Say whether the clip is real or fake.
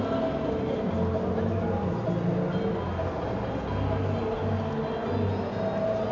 real